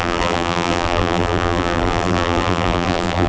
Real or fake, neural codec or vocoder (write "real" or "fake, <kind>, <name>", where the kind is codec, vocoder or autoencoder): fake, vocoder, BigVGAN v2